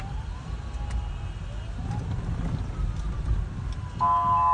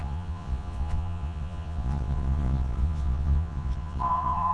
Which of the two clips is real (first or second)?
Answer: first